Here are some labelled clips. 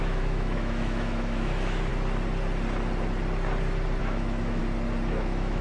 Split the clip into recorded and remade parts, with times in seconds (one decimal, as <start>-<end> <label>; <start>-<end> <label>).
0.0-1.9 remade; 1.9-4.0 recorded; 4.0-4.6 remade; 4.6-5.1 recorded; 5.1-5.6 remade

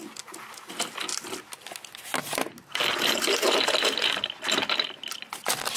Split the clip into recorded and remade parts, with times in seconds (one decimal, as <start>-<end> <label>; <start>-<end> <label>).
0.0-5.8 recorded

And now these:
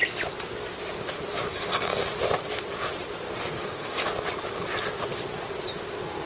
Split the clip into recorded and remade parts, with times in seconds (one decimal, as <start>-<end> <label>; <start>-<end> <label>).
0.0-1.5 recorded; 1.5-2.1 remade; 2.1-3.6 recorded; 3.6-4.1 remade; 4.1-6.3 recorded

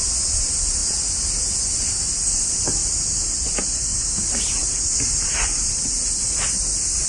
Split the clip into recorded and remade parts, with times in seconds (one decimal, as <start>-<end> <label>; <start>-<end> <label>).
0.0-0.8 remade; 0.8-2.3 recorded; 2.3-7.1 remade

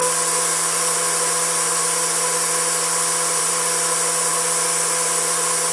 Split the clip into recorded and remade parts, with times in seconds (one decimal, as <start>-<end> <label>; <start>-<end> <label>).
0.0-5.7 recorded